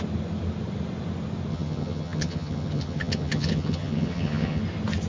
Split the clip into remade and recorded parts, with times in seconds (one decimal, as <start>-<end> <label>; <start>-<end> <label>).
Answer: 0.0-1.5 recorded; 1.5-4.6 remade; 4.6-5.1 recorded